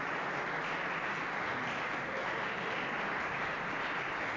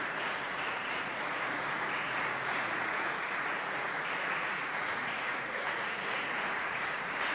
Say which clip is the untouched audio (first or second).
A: first